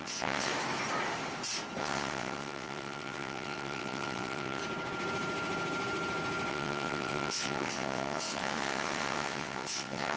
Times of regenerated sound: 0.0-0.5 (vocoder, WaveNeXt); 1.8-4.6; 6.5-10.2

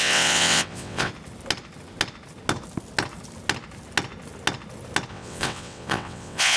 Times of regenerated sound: 0.0-1.1 (vocoder, WaveNeXt); 5.1-6.6

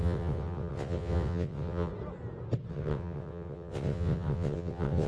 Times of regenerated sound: 0.0-1.9 (vocoder, WaveNeXt); 2.7-5.1

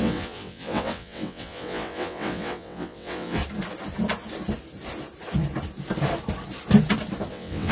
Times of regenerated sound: 0.0-3.4 (vocoder, WaveNeXt); 7.3-7.7

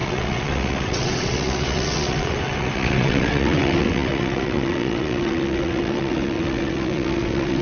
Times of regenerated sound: 0.0-7.6 (vocoder, WaveNeXt)

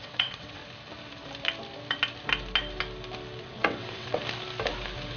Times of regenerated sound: 0.0-0.6 (vocoder, WaveNeXt); 3.4-4.2